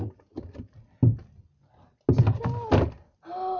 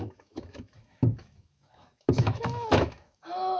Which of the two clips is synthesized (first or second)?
second